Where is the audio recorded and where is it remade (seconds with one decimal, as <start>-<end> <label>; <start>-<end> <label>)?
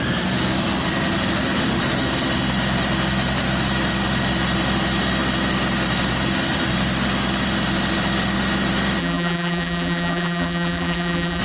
0.0-9.0 recorded; 9.0-11.4 remade